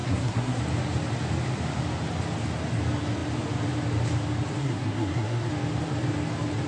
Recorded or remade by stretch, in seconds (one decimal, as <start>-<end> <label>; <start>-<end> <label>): 0.0-0.6 remade; 0.6-4.6 recorded; 4.6-5.5 remade; 5.5-6.7 recorded